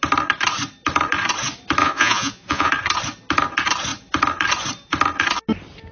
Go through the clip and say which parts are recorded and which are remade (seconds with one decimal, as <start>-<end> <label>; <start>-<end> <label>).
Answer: 0.0-1.8 recorded; 1.8-2.7 remade; 2.7-5.9 recorded